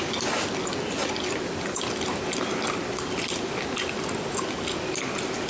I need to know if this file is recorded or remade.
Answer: recorded